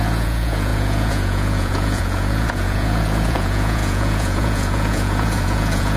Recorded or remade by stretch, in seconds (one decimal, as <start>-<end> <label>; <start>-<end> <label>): 0.0-6.0 remade